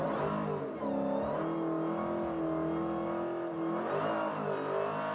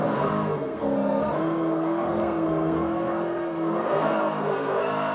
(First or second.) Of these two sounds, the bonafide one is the first